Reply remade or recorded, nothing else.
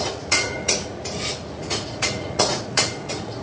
remade